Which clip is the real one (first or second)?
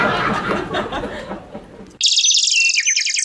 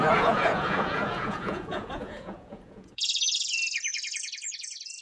first